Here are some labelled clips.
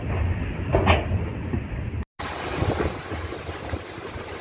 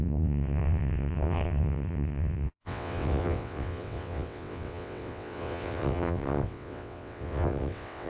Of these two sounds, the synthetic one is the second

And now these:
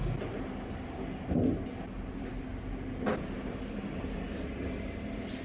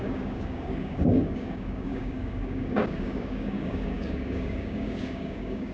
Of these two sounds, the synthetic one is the second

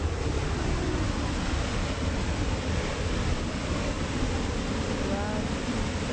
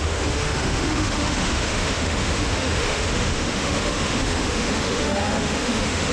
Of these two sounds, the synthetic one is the second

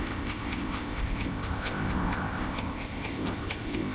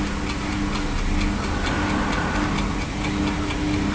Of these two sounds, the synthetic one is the first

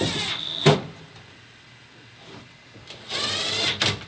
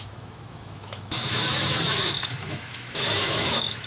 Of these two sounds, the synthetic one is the second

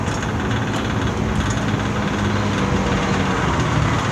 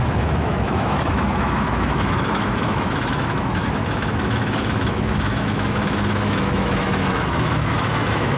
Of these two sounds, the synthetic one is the second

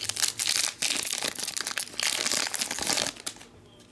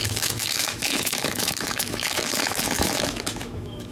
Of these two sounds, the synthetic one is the second